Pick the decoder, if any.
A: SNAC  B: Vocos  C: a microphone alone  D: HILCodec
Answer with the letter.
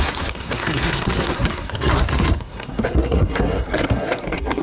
A